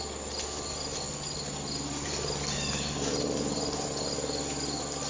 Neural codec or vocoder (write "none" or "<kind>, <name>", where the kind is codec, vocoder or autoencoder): none